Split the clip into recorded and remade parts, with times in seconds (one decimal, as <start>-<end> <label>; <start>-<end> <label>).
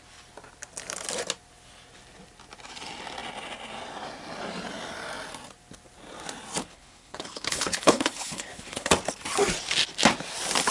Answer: 0.0-6.6 recorded; 6.6-8.9 remade; 8.9-10.7 recorded